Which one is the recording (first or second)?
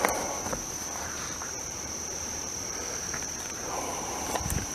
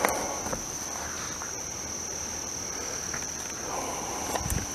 second